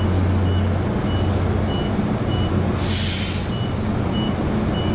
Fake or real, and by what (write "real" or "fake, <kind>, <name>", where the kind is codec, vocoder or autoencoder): real